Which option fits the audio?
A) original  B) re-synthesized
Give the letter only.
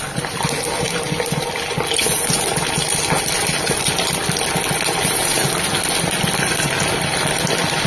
A